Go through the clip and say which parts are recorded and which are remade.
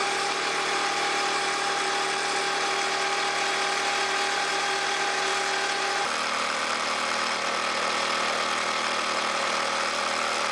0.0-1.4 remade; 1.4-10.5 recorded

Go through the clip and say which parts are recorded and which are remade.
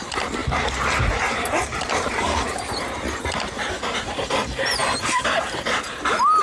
0.0-0.4 recorded; 0.4-2.6 remade; 2.6-6.4 recorded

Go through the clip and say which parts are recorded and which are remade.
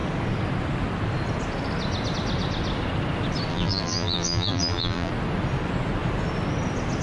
0.0-3.5 recorded; 3.5-5.1 remade; 5.1-7.0 recorded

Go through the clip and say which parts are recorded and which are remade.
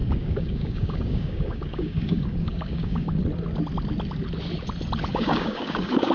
0.0-3.2 remade; 3.2-5.1 recorded; 5.1-6.1 remade